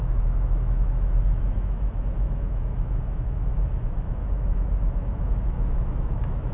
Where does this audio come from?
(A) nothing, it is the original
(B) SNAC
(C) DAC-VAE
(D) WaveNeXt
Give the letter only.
C